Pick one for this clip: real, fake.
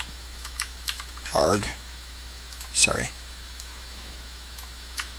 fake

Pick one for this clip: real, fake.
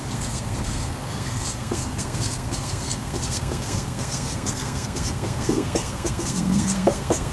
fake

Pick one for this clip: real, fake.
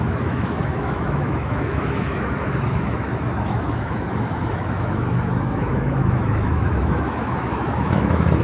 fake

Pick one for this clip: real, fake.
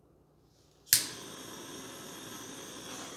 real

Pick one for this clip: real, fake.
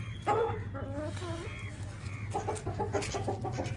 real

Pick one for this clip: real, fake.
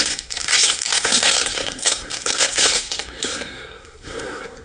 fake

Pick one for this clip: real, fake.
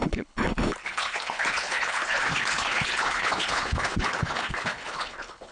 fake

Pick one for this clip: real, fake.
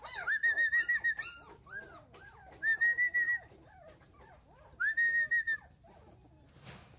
real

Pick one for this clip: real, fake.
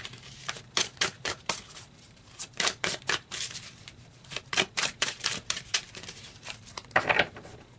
fake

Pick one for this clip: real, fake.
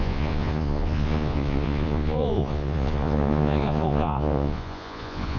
fake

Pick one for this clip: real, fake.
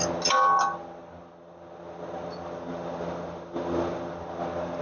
real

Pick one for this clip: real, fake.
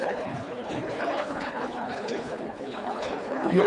fake